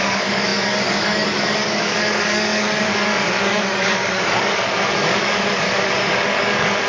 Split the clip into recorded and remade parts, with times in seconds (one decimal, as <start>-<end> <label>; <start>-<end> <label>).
0.0-6.9 remade